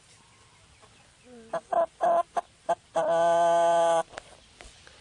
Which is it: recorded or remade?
remade